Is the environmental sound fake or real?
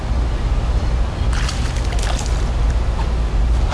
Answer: real